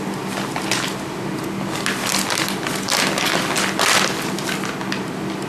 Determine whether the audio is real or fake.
real